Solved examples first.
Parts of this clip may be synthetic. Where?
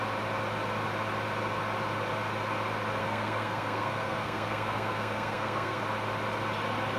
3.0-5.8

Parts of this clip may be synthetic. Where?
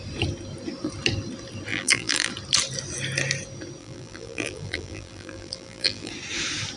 1.7-2.3; 3.8-6.1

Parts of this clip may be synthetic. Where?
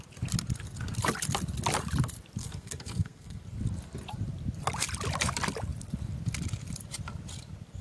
2.4-3.4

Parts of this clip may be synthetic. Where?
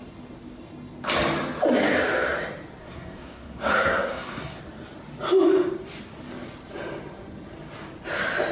2.8-4.6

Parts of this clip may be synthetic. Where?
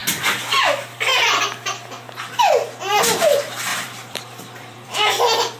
3.7-5.1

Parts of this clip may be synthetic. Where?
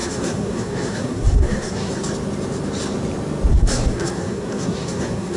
0.0-1.9; 3.5-5.4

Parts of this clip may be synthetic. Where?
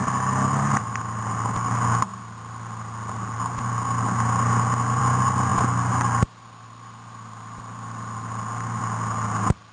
none